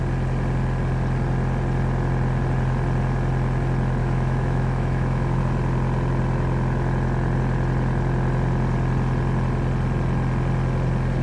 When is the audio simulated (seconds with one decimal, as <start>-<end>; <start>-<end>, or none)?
4.0-5.4